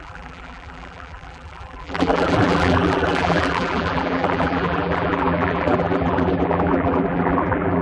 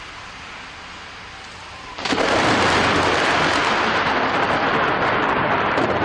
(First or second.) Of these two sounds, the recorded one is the second